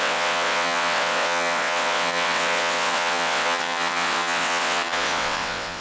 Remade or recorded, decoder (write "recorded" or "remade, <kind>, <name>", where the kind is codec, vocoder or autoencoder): remade, vocoder, WaveNeXt